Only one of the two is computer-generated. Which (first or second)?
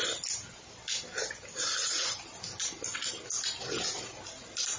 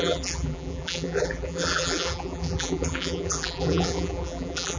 second